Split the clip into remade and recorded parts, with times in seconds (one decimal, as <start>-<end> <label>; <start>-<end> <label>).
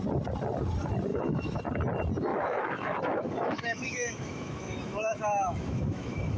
0.0-1.1 recorded; 1.1-1.6 remade; 1.6-2.3 recorded; 2.3-6.4 remade